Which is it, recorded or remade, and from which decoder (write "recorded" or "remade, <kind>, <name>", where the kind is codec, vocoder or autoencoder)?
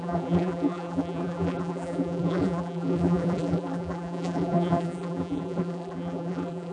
remade, vocoder, BigVGAN v2